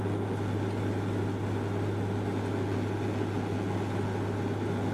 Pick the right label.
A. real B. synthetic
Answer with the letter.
A